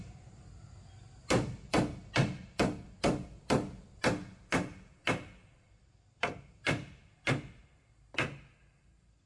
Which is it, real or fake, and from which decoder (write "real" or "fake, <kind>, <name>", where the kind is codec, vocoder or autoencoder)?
real